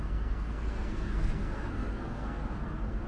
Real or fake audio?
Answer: fake